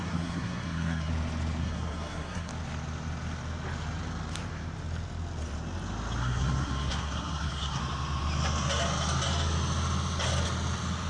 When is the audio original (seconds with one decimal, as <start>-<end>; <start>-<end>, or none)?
1.1-1.6; 2.5-6.2; 7.8-11.1